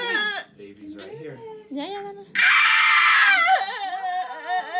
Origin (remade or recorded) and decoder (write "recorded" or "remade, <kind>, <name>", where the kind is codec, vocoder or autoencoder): recorded